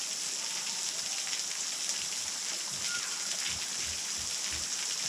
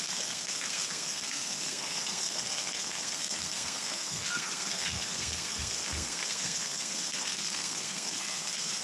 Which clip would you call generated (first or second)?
second